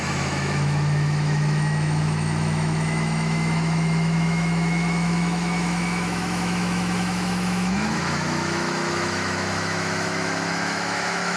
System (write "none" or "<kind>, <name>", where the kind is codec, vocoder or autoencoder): autoencoder, DAC-VAE